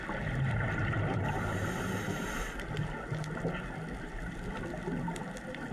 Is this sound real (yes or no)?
yes